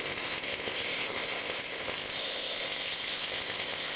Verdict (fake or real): fake